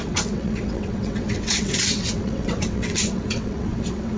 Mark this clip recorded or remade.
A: remade